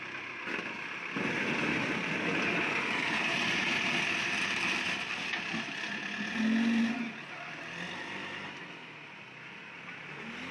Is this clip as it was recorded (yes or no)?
yes